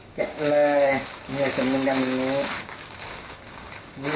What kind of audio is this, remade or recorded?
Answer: remade